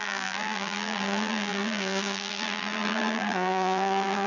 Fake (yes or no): yes